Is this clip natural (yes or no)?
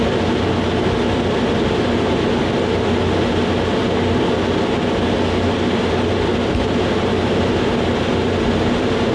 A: yes